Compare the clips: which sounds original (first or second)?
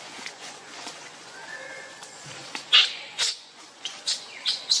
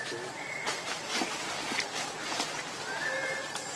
second